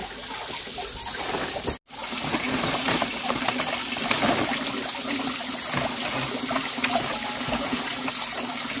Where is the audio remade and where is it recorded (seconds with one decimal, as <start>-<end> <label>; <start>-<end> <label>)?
0.0-2.0 recorded; 2.0-3.5 remade; 3.5-8.8 recorded

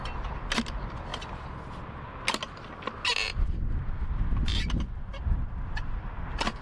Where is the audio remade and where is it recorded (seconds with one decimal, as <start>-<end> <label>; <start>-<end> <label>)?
0.0-6.6 recorded

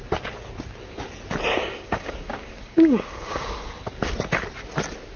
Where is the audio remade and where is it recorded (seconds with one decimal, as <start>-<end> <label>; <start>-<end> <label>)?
0.0-1.5 recorded; 1.5-3.7 remade; 3.7-5.2 recorded